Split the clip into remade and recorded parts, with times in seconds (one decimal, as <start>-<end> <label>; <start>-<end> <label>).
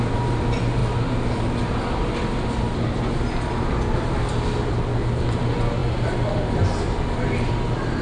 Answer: 0.0-8.0 recorded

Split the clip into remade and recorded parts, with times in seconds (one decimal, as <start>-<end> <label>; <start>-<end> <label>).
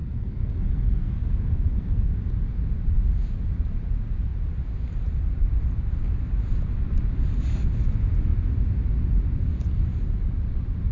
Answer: 0.0-2.1 remade; 2.1-10.9 recorded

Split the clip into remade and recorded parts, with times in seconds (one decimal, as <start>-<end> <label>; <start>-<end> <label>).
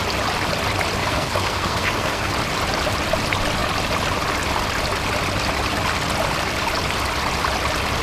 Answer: 0.0-1.0 recorded; 1.0-2.3 remade; 2.3-8.0 recorded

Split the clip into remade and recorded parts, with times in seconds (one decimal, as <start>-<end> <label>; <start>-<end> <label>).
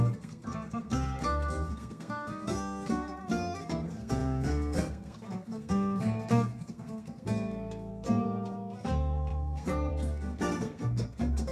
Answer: 0.0-11.5 remade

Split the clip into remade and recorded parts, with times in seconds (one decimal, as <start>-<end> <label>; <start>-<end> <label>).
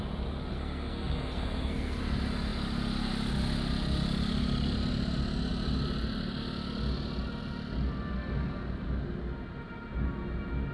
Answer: 0.0-0.5 recorded; 0.5-2.0 remade; 2.0-10.7 recorded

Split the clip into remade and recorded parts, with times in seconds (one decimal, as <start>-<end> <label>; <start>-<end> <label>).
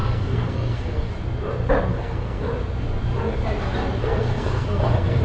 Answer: 0.0-1.1 remade; 1.1-1.9 recorded; 1.9-2.5 remade; 2.5-4.0 recorded; 4.0-5.2 remade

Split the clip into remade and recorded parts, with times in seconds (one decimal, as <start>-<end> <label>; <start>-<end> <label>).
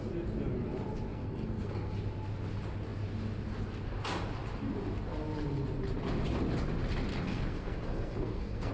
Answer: 0.0-1.1 recorded; 1.1-1.9 remade; 1.9-7.1 recorded; 7.1-8.7 remade